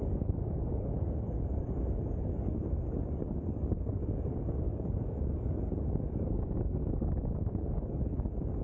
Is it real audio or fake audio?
fake